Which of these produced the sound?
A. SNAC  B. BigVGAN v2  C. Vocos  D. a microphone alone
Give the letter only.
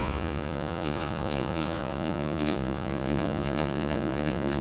C